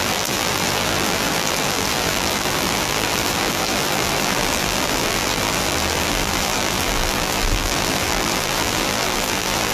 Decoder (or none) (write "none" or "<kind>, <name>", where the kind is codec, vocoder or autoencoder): vocoder, BigVGAN v2